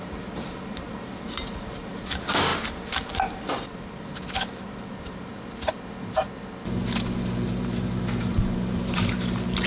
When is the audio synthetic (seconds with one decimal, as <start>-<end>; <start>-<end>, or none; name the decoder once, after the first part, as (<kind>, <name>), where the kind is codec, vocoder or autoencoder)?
0.0-2.5 (vocoder, BigVGAN v2); 3.6-5.3; 8.2-9.7